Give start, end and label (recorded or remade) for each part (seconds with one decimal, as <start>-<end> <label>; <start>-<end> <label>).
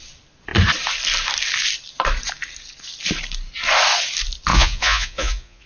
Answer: 0.0-4.5 recorded; 4.5-5.7 remade